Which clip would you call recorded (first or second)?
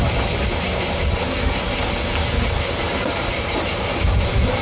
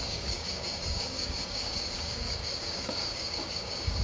first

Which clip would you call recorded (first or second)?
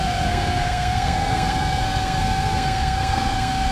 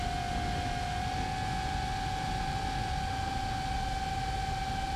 second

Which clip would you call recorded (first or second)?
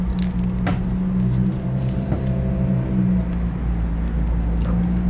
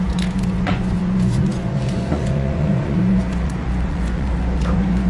first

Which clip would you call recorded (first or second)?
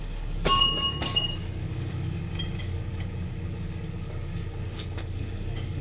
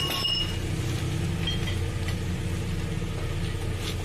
second